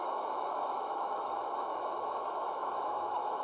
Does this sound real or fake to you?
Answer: fake